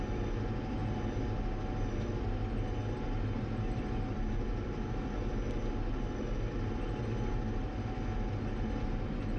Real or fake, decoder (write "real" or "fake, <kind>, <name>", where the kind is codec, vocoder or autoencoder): real